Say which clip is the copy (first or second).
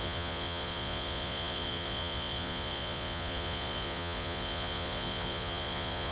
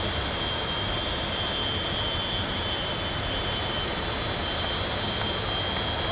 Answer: first